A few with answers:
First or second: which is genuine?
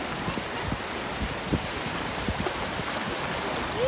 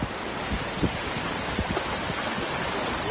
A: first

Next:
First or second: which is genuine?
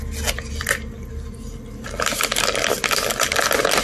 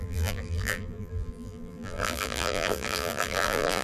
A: first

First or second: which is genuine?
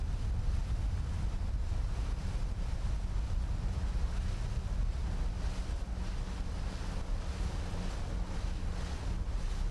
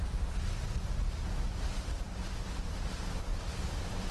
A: first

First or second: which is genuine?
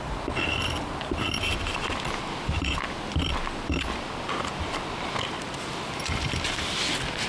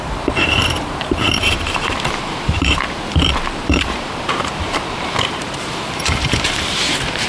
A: first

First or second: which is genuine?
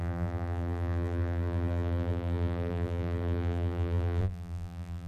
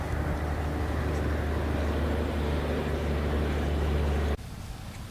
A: second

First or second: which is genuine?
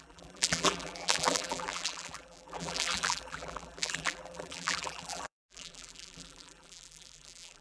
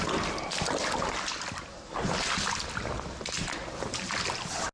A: second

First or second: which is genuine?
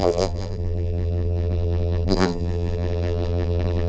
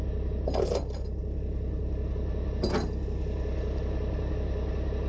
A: second